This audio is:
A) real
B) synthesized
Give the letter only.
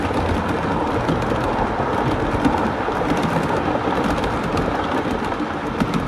A